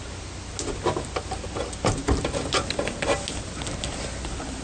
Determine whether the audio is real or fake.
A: real